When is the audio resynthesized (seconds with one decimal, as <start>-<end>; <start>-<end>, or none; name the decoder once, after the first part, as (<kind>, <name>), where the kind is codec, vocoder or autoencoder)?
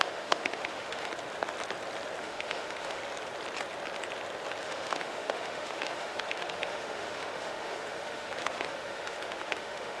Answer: 0.0-1.1 (autoencoder, DAC-VAE); 2.2-3.0; 4.6-10.0